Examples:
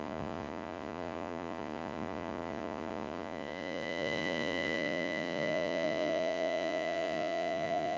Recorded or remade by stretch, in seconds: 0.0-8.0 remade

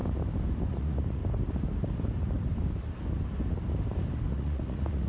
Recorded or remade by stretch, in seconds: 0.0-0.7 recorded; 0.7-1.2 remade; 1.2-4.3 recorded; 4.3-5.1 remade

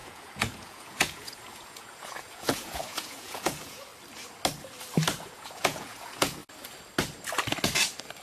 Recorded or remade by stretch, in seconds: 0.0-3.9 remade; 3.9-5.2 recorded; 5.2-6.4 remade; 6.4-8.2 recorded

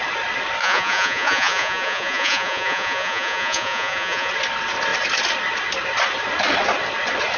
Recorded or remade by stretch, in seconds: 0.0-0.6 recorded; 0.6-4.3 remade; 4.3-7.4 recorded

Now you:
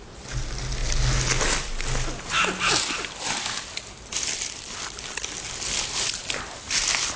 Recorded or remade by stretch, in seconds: 0.0-7.2 recorded